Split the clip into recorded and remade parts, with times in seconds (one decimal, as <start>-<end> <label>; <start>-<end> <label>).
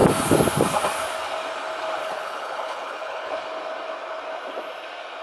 0.0-2.0 recorded; 2.0-3.3 remade; 3.3-5.2 recorded